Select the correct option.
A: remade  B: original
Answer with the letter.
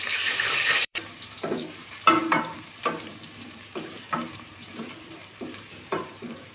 A